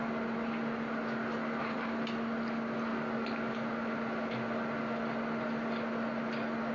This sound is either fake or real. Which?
real